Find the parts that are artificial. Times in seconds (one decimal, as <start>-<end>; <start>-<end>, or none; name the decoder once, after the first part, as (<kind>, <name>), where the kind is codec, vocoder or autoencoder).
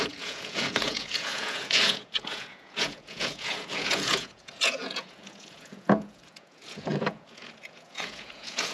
0.0-8.7 (vocoder, Vocos)